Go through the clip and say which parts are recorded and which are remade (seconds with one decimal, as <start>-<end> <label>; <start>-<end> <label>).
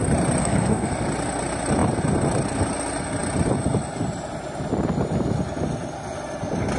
0.0-0.4 recorded; 0.4-0.9 remade; 0.9-6.8 recorded